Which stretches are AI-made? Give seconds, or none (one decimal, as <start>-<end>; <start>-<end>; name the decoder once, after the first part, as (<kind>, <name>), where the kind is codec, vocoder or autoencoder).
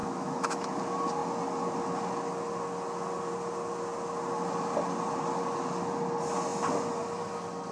0.0-0.7 (autoencoder, DAC-VAE)